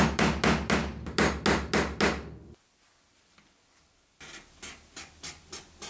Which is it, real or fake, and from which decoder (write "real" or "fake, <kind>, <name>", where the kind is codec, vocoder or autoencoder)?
real